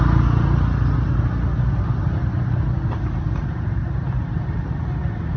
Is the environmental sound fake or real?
real